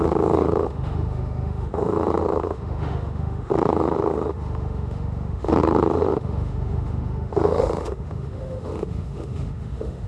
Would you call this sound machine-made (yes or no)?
yes